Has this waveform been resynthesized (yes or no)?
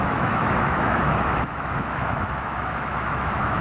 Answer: yes